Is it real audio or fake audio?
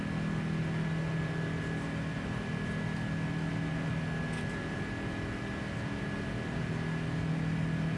real